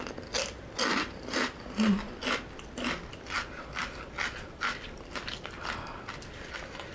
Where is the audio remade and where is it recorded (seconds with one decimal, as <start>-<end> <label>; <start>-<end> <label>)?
0.0-6.9 recorded